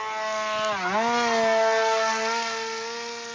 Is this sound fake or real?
real